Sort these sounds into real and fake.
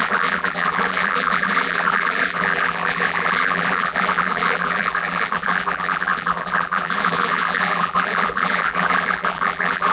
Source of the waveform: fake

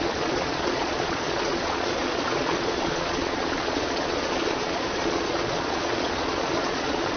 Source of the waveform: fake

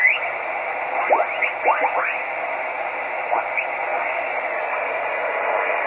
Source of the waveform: real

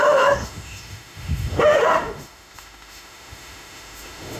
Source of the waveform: fake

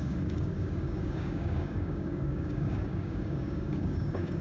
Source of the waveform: fake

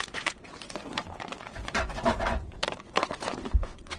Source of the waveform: fake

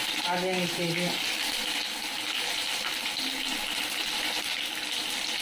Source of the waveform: real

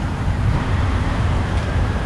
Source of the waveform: fake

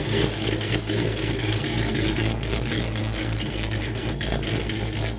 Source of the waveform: fake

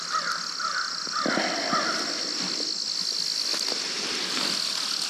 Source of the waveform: real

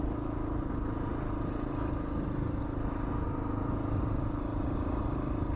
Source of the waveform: real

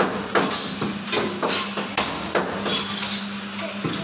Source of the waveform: real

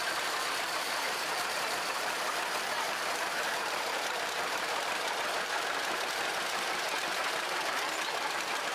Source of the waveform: fake